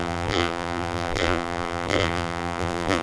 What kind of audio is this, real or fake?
fake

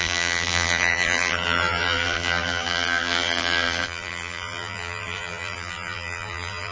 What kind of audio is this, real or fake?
fake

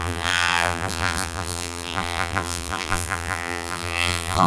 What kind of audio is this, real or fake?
fake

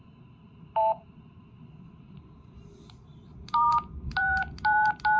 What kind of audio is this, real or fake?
fake